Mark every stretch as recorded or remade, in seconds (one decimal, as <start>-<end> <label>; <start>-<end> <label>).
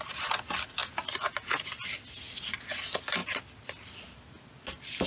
0.0-5.1 recorded